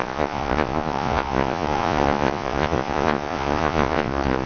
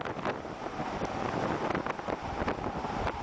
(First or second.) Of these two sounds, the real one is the second